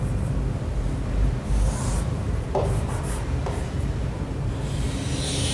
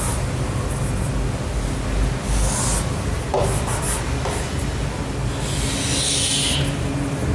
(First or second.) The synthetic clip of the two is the first